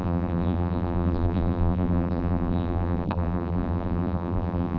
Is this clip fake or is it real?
fake